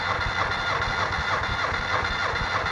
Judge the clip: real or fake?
real